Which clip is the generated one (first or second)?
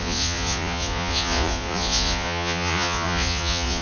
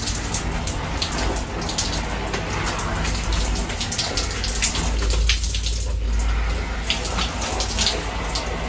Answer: first